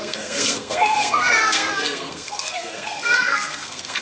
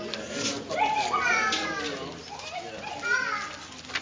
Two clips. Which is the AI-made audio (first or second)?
first